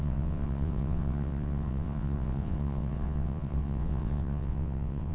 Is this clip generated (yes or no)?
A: yes